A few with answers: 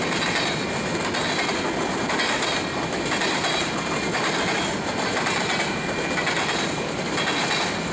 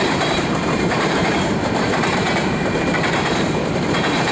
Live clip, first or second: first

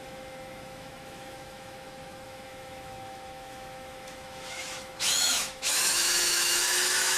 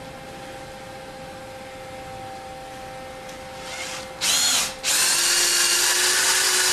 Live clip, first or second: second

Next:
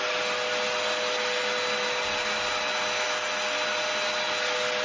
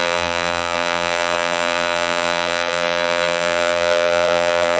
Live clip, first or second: first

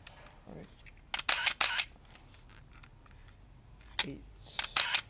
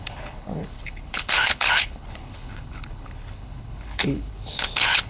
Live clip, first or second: first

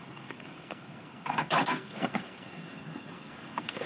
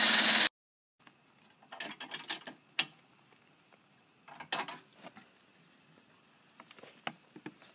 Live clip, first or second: second